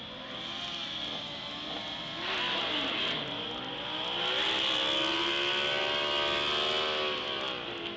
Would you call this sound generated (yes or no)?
no